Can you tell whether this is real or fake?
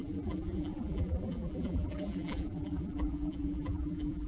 fake